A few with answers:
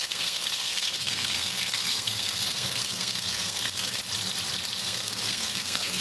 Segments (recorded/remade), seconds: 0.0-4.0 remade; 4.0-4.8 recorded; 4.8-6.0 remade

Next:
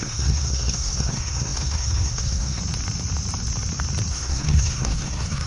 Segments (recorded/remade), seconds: 0.0-2.6 remade; 2.6-4.1 recorded; 4.1-5.5 remade

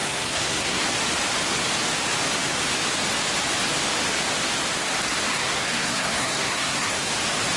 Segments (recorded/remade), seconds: 0.0-0.8 remade; 0.8-5.3 recorded; 5.3-7.1 remade; 7.1-7.6 recorded